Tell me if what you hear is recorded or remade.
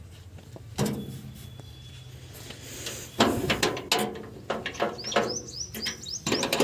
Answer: recorded